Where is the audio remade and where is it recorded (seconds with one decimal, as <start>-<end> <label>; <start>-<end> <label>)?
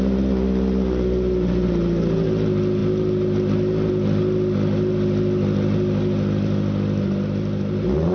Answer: 0.0-8.1 recorded